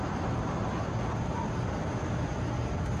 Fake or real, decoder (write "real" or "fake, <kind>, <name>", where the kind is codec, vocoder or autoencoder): real